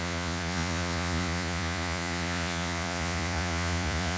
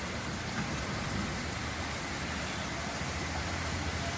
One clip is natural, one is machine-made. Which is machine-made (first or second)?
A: first